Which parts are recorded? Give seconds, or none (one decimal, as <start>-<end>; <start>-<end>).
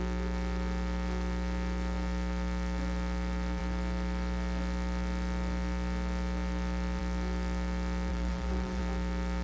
0.0-8.1; 8.8-9.4